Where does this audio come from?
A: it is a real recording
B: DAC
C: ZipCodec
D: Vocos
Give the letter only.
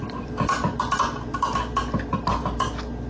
A